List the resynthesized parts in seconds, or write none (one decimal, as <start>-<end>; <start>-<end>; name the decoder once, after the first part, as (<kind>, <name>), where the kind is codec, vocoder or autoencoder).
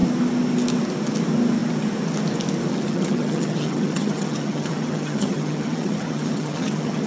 2.7-7.1 (vocoder, HiFi-GAN)